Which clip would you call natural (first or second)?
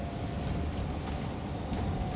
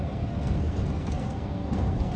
first